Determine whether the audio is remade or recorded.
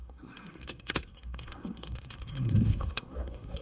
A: remade